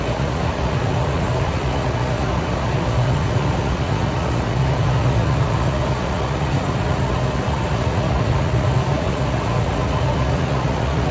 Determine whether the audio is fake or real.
fake